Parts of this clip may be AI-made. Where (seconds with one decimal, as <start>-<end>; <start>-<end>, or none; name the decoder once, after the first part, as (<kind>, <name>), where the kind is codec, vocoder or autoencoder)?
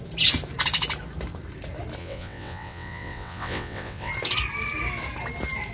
2.0-4.1 (vocoder, WaveNeXt)